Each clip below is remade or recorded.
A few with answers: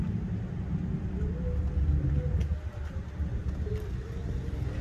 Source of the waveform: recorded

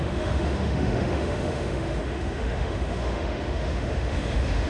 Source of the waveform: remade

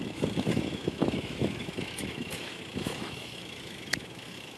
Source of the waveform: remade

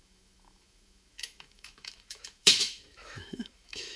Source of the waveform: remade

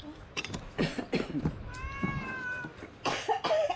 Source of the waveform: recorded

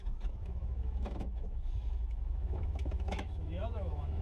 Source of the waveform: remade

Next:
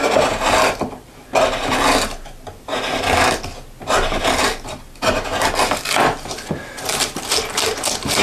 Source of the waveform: recorded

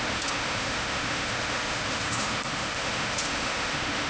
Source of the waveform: remade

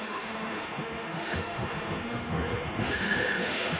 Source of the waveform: remade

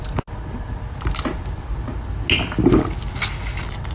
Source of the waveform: recorded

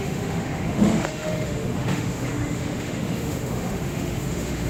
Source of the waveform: remade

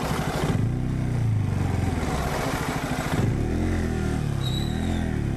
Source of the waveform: recorded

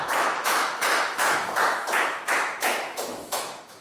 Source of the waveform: remade